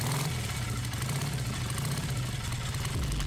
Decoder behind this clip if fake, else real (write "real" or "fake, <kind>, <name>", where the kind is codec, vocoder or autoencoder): real